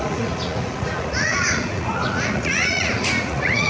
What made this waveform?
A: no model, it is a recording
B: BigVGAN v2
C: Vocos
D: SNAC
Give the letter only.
C